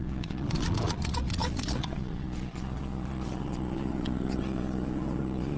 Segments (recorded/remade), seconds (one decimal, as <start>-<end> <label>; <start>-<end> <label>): 0.0-5.6 remade